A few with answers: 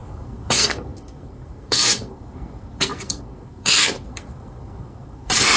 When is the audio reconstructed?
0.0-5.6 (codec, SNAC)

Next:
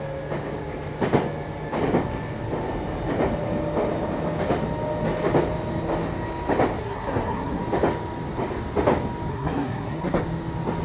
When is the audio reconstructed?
6.8-7.6 (codec, SNAC); 9.3-10.2

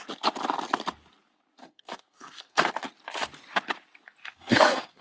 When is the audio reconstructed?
1.6-2.7 (codec, SNAC); 4.2-5.0

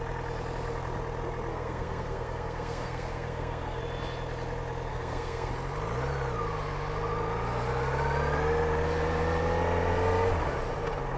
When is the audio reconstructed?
1.5-3.8 (codec, SNAC); 4.9-5.5

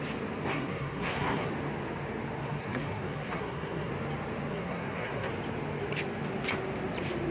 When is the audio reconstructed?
0.5-1.5 (codec, SNAC); 2.4-3.9; 4.5-5.3